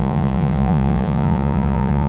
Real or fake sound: fake